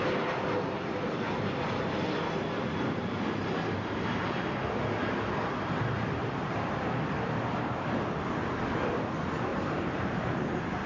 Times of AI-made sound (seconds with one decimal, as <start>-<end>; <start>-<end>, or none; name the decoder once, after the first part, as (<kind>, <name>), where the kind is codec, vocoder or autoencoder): 3.0-3.7 (vocoder, BigVGAN v2); 6.2-7.8; 9.5-10.9